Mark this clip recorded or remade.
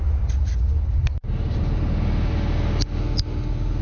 recorded